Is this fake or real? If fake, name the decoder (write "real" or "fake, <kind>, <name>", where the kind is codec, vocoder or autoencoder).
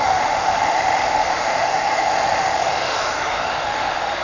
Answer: fake, autoencoder, DAC-VAE